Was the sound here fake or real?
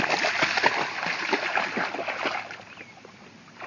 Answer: real